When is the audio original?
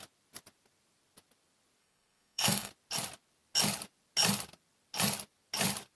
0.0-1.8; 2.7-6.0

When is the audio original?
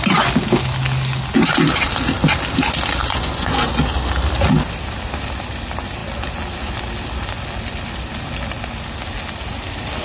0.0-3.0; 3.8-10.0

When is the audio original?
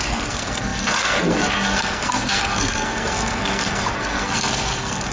none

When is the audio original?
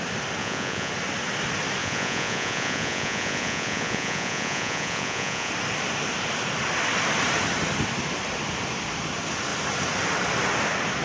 0.0-0.4; 0.9-1.8; 5.5-11.0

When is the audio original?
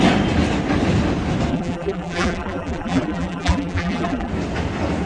0.0-1.5; 4.3-5.1